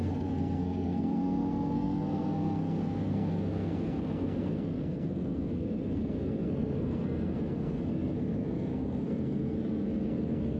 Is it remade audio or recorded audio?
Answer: remade